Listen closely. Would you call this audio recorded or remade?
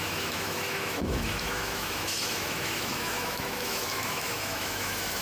remade